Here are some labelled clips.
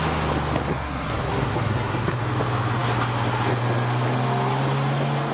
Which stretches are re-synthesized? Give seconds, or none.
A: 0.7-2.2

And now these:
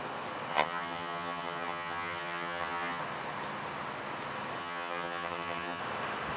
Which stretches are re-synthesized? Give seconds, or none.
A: 0.5-3.0; 4.6-5.8

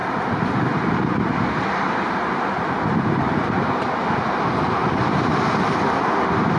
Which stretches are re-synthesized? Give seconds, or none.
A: 0.0-4.0

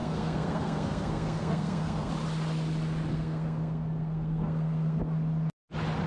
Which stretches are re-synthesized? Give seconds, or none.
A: 0.0-2.1; 3.1-5.0

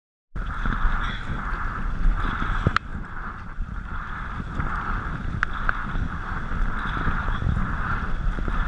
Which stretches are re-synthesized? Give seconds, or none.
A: 2.9-4.0

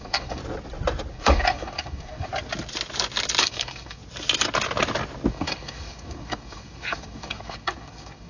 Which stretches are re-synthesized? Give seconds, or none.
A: 0.0-0.4; 1.1-2.3; 3.4-4.0; 5.3-8.3

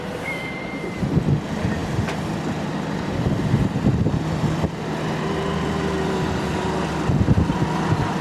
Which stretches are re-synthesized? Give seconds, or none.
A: 0.0-8.2